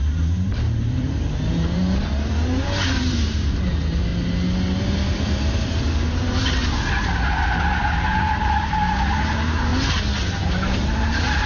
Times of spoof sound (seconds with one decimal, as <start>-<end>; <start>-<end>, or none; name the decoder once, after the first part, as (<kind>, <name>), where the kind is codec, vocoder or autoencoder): 0.0-4.1 (vocoder, BigVGAN v2); 4.8-6.6; 7.8-9.7; 10.2-11.5